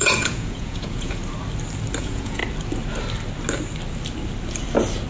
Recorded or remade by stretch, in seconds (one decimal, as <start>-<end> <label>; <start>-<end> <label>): 0.0-1.2 remade; 1.2-2.0 recorded; 2.0-2.4 remade; 2.4-5.1 recorded